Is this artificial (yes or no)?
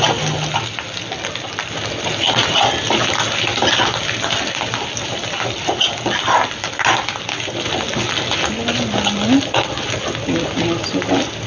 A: no